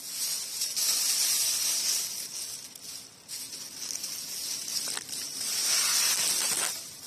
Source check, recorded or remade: recorded